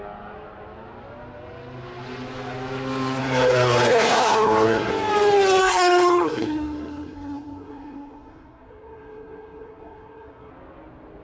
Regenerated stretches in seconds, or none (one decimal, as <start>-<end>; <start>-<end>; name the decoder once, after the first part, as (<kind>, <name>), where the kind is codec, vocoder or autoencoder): 3.2-4.9 (codec, SNAC); 5.6-10.5